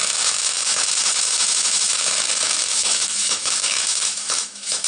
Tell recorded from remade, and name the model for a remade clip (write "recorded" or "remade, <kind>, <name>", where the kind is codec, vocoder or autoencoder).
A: remade, autoencoder, DAC-VAE